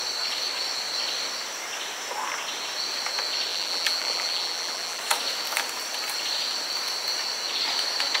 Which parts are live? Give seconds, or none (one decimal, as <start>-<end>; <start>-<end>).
0.0-3.5; 5.0-8.2